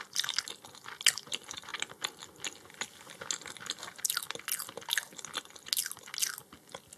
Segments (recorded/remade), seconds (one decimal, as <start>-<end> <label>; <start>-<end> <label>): 0.0-7.0 recorded